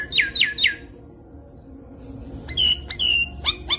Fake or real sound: real